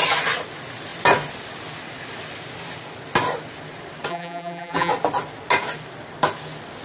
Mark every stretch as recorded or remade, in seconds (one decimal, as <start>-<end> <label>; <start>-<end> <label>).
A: 0.0-4.1 recorded; 4.1-4.9 remade; 4.9-6.8 recorded